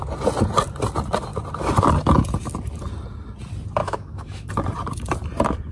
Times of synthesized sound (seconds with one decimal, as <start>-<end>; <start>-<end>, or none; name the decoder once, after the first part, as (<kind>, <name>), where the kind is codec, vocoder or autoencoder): 3.8-4.5 (autoencoder, DAC-VAE)